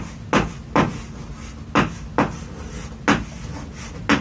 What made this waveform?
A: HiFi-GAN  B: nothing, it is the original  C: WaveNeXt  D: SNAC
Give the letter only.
B